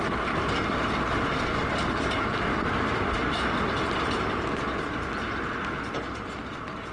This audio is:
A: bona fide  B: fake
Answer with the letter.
B